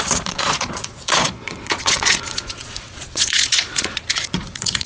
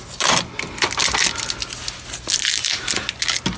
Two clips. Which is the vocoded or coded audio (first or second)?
first